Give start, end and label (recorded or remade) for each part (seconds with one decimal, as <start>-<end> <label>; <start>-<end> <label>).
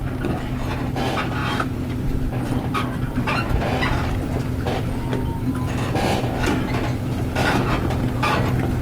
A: 0.0-1.4 recorded; 1.4-5.0 remade; 5.0-8.8 recorded